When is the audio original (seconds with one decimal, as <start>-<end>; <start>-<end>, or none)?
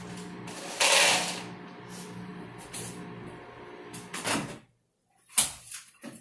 0.0-6.2